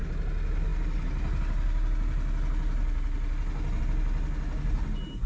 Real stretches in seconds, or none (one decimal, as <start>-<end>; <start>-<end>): 0.0-5.3